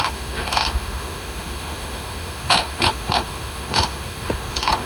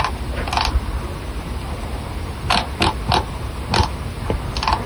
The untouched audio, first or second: second